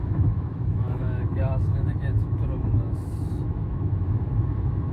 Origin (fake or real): fake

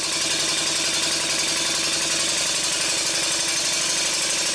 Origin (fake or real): real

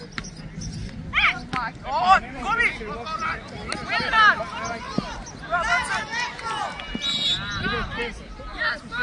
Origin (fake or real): real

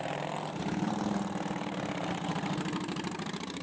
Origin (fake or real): fake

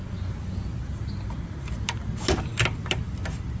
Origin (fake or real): real